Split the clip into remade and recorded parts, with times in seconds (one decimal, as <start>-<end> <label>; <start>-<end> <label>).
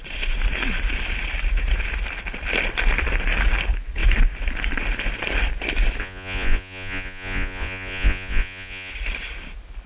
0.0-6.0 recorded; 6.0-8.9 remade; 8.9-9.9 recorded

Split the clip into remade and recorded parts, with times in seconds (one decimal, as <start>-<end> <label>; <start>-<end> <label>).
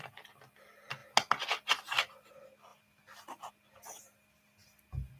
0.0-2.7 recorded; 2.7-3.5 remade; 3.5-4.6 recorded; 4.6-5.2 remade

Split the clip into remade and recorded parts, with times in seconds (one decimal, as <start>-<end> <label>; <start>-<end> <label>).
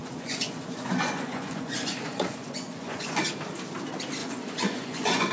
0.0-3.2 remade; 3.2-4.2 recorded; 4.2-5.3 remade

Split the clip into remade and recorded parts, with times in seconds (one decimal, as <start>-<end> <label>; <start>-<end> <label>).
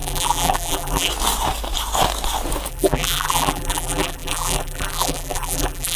0.0-1.1 remade; 1.1-2.7 recorded; 2.7-6.0 remade